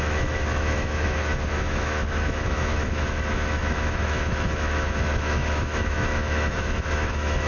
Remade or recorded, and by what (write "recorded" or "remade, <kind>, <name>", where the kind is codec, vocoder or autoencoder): remade, autoencoder, DAC-VAE